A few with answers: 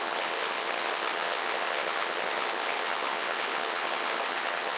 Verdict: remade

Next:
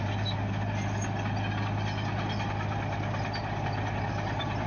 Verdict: recorded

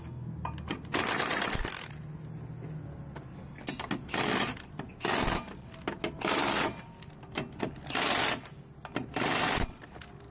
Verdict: recorded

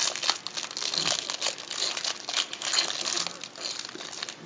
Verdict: recorded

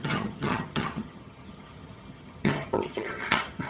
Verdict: remade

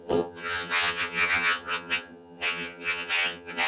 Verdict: remade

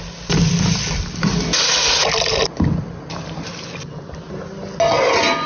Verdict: recorded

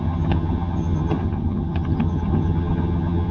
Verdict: remade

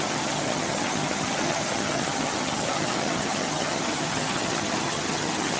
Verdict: remade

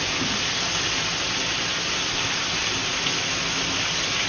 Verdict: recorded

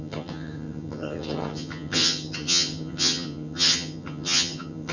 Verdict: remade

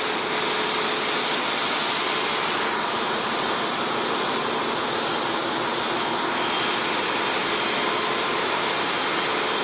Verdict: recorded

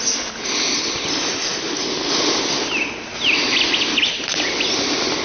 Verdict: recorded